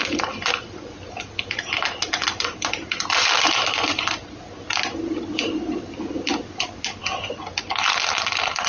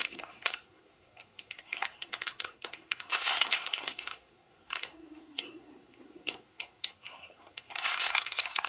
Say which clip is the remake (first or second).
second